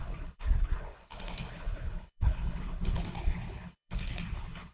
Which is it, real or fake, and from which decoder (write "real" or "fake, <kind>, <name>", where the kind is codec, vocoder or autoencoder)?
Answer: fake, codec, HILCodec